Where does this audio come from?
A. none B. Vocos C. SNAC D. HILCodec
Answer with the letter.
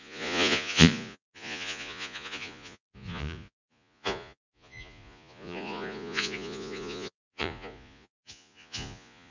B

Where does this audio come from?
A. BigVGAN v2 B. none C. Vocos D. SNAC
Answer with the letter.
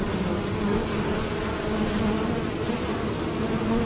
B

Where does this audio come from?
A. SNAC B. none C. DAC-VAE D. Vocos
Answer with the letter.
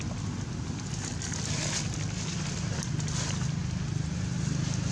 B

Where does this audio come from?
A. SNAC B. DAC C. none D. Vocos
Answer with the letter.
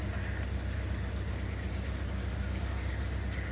C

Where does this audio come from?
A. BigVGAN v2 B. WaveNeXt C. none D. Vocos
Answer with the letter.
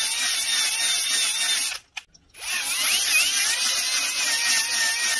C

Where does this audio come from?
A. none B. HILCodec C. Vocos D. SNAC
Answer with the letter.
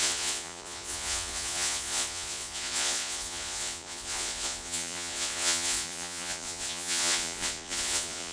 C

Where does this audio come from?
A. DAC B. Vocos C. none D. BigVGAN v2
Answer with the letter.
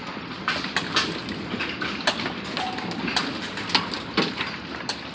C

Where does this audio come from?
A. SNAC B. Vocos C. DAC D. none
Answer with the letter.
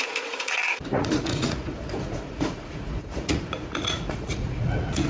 B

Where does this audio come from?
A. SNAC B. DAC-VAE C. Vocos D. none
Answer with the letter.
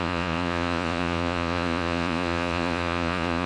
C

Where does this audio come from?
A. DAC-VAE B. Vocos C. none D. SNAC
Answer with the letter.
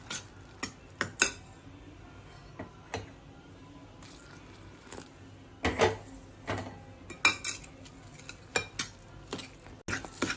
C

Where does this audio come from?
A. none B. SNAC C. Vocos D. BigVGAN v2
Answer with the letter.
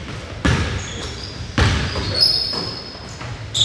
A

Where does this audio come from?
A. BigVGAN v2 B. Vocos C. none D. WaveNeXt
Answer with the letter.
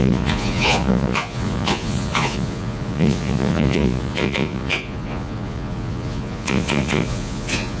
B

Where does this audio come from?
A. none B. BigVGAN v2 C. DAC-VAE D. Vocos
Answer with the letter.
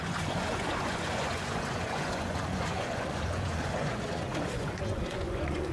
D